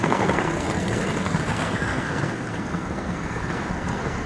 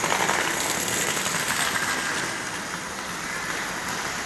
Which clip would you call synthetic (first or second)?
first